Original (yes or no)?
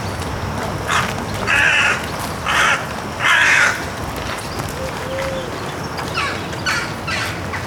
yes